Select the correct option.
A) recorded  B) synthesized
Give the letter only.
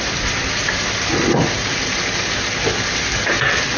A